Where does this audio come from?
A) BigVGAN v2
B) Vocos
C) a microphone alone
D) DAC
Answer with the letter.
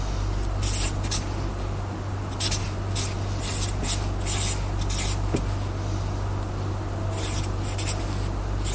C